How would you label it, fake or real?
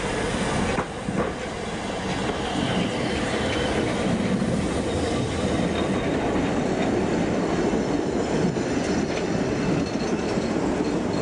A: real